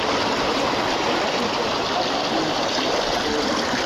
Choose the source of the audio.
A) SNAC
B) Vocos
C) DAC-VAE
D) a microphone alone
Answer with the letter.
D